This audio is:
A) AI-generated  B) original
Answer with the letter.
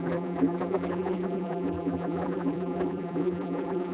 A